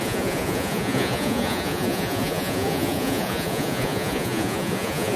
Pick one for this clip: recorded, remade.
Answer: remade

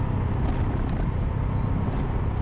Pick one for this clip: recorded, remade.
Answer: recorded